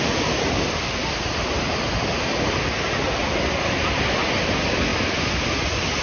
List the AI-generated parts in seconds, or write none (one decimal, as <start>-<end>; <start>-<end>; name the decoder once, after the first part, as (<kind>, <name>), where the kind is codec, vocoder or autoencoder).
4.9-5.4 (vocoder, BigVGAN v2)